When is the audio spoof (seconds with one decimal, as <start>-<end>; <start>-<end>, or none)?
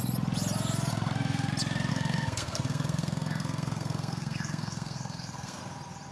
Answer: 0.9-1.5; 1.9-5.6